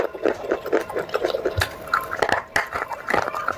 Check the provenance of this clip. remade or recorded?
recorded